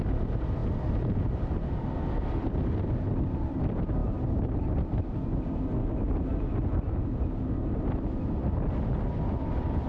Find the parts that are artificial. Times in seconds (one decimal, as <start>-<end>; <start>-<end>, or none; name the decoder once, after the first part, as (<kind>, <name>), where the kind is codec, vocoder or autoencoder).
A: none